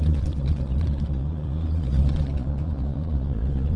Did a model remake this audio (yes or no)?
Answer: yes